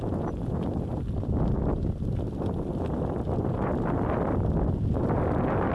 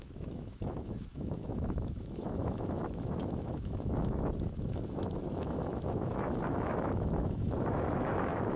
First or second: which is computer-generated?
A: second